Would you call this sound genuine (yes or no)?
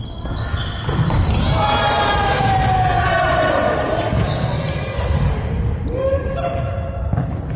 yes